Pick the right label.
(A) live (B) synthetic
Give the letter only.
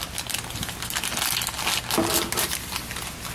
A